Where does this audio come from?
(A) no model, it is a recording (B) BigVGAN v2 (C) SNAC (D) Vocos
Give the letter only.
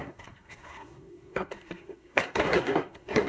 C